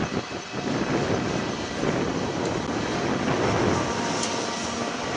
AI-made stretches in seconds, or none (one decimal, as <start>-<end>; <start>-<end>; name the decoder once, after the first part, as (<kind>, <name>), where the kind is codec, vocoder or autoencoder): 1.0-1.5 (vocoder, BigVGAN v2)